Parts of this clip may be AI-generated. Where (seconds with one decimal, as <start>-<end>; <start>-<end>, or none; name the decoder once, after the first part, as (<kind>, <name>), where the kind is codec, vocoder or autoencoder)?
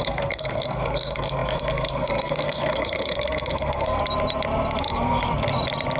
0.0-4.0 (codec, SNAC); 4.8-5.2